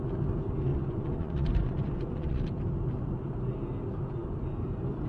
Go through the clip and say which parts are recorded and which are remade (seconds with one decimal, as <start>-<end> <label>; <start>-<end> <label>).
0.0-0.7 recorded; 0.7-2.4 remade; 2.4-5.1 recorded